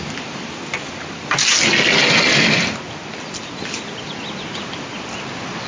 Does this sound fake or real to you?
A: real